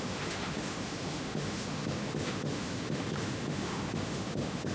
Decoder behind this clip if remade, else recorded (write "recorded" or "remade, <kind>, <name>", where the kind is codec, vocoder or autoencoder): remade, autoencoder, DAC-VAE